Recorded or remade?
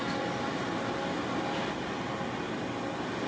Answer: recorded